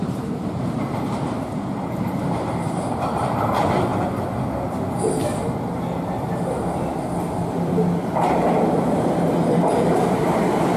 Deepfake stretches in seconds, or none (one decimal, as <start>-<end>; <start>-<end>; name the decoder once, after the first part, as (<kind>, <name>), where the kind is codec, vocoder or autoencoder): 0.0-3.9 (vocoder, BigVGAN v2); 8.1-10.8